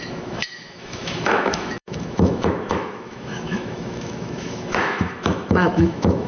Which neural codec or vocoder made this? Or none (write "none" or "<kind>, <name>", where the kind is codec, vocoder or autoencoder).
autoencoder, DAC-VAE